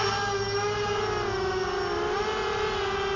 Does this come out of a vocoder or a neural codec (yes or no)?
no